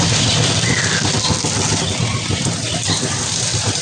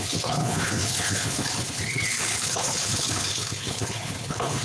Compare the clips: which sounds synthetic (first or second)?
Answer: second